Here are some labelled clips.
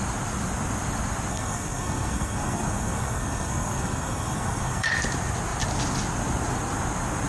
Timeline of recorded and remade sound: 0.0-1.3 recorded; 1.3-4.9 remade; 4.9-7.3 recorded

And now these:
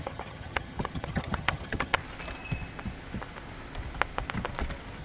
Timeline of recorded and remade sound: 0.0-2.0 remade; 2.0-5.0 recorded

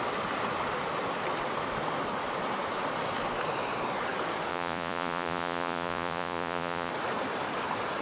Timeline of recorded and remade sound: 0.0-4.5 recorded; 4.5-6.9 remade; 6.9-8.0 recorded

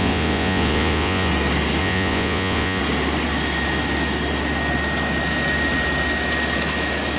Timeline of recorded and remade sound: 0.0-1.3 remade; 1.3-1.8 recorded; 1.8-2.8 remade; 2.8-7.2 recorded

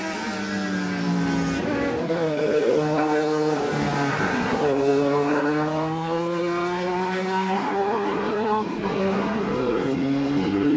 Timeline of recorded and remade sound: 0.0-2.0 recorded; 2.0-3.6 remade; 3.6-4.1 recorded; 4.1-10.8 remade

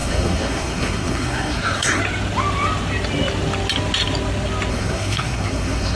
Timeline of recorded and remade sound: 0.0-2.0 remade; 2.0-4.7 recorded; 4.7-6.0 remade